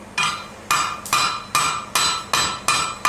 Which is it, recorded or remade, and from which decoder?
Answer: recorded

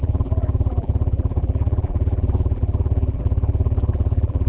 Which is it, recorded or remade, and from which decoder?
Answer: remade, vocoder, BigVGAN v2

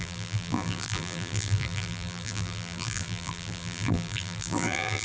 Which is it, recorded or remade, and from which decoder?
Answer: remade, vocoder, BigVGAN v2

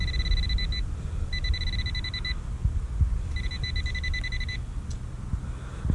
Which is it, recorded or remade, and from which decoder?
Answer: recorded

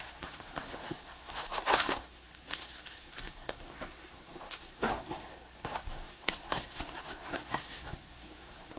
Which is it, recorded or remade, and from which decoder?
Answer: remade, codec, SNAC